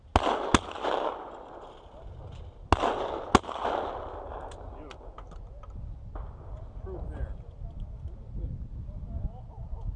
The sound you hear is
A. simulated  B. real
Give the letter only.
B